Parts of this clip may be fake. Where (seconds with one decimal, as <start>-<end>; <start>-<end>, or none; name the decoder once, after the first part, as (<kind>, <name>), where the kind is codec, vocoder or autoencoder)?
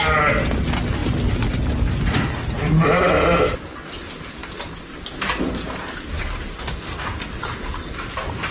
none